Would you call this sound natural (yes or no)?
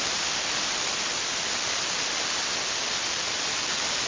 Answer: yes